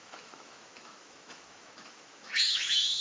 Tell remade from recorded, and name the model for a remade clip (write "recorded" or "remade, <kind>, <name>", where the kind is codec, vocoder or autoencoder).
remade, autoencoder, DAC-VAE